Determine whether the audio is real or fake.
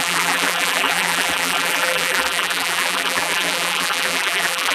fake